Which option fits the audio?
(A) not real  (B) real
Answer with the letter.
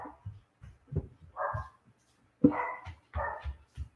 B